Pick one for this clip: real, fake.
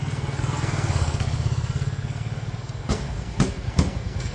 fake